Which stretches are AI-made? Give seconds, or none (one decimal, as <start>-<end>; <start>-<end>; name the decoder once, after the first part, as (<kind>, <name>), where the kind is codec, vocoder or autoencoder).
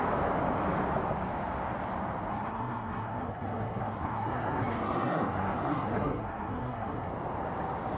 2.3-7.1 (codec, SNAC)